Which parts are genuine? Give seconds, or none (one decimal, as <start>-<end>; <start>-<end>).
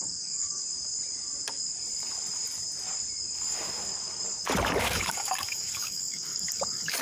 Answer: 0.6-4.8